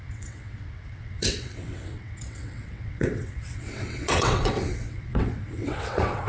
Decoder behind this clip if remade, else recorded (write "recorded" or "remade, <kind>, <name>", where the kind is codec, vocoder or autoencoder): remade, vocoder, WaveNeXt